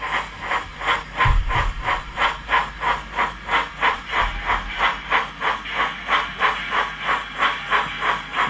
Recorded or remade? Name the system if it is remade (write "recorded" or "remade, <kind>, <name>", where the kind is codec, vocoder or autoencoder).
recorded